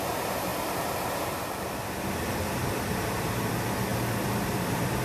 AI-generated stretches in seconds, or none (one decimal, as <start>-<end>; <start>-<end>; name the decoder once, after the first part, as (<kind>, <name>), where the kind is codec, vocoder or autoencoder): 0.5-3.5 (vocoder, BigVGAN v2); 3.9-5.0